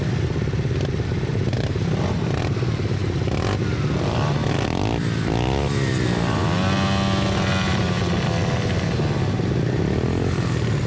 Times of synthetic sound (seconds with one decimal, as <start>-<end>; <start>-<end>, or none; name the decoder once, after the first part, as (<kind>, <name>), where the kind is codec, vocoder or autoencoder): 1.3-2.4 (vocoder, BigVGAN v2)